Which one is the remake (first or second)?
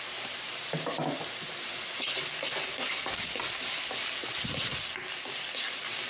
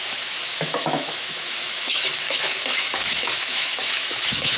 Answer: second